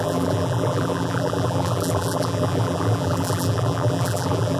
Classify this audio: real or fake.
fake